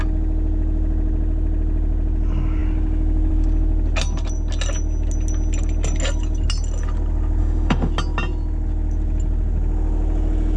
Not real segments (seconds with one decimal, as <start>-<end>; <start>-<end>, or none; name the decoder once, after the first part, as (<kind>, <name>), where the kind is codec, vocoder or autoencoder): 7.4-7.9 (autoencoder, DAC-VAE)